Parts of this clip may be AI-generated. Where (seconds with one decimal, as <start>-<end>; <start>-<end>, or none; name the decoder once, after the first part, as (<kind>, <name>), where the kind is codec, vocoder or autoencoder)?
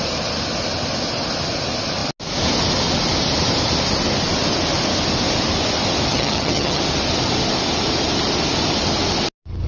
6.1-6.8 (vocoder, HiFi-GAN)